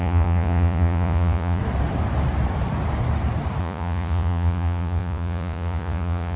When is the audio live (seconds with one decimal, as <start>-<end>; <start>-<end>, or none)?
1.6-3.6